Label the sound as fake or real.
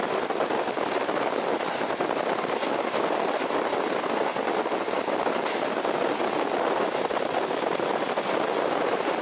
real